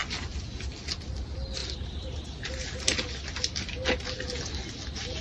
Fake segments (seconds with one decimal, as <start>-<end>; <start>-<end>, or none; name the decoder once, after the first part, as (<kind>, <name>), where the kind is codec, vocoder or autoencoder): 1.6-2.5 (vocoder, BigVGAN v2)